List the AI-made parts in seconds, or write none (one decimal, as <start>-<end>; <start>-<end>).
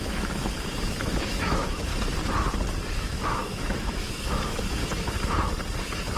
0.0-1.9; 3.0-4.8